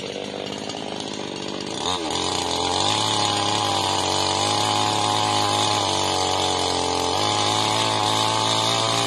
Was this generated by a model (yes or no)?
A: no